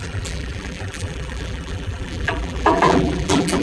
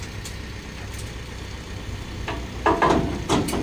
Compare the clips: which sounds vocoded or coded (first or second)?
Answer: first